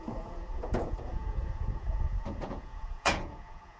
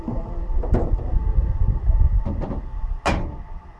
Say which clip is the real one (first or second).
second